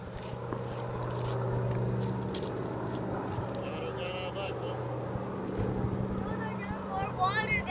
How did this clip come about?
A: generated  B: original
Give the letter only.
B